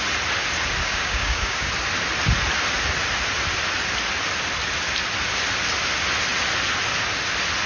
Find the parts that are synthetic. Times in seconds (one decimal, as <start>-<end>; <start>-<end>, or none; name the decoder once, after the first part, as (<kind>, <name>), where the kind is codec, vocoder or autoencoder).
0.8-1.7 (codec, DAC)

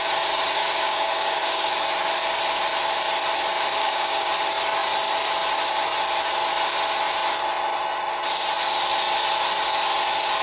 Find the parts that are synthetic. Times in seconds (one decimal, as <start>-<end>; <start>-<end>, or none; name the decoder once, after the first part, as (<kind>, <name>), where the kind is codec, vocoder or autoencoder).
0.6-1.7 (codec, DAC); 3.8-4.3

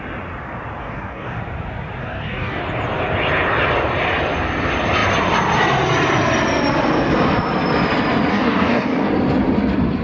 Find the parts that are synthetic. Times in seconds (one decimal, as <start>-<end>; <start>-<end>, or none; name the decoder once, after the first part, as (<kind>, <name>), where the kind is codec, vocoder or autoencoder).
0.8-1.4 (codec, DAC); 2.0-2.6; 8.3-9.1